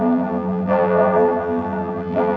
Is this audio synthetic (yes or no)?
yes